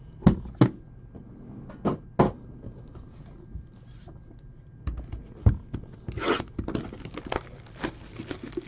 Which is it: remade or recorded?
recorded